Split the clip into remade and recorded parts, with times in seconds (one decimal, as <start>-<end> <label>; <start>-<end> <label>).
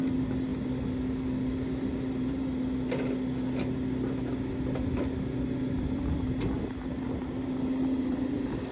0.0-8.7 recorded